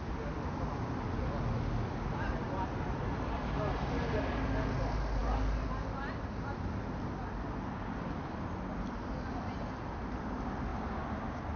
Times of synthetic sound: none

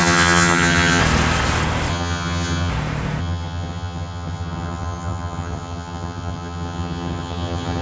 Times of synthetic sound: 0.0-1.0 (vocoder, HiFi-GAN); 1.9-2.7; 3.2-7.8

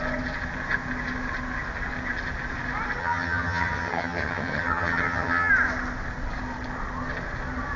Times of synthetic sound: 3.0-5.5 (vocoder, HiFi-GAN)